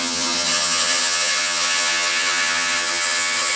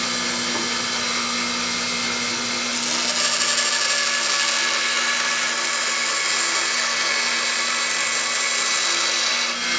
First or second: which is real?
second